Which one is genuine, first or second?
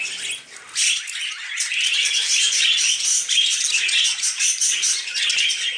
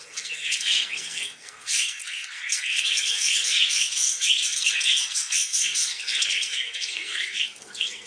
first